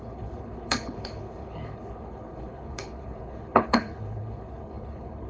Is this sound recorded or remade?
remade